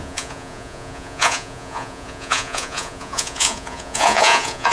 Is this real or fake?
fake